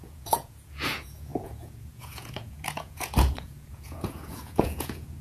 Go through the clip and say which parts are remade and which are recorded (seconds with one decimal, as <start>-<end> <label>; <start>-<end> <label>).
0.0-5.2 remade